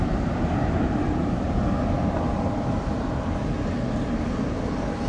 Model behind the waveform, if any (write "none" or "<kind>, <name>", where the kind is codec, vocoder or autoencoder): none